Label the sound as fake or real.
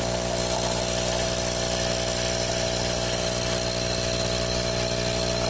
fake